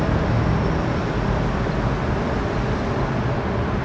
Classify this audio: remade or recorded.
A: recorded